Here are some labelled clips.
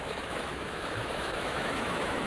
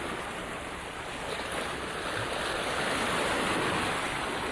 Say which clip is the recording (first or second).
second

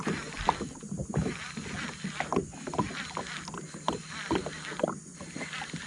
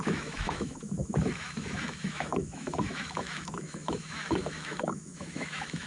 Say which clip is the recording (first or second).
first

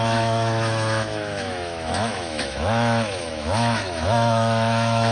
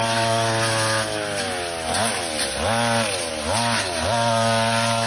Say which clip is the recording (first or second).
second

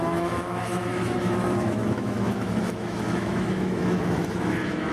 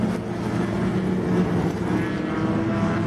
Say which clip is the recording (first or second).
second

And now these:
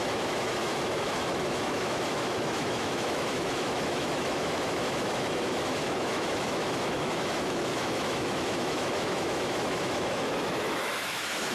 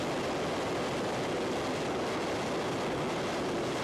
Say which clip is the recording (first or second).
second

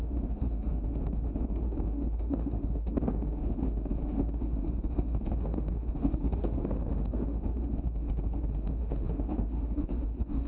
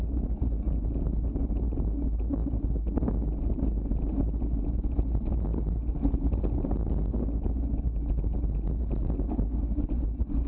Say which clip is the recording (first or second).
second